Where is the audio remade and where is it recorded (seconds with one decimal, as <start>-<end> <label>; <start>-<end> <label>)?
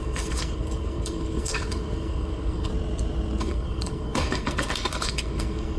0.0-2.7 remade; 2.7-3.4 recorded; 3.4-5.8 remade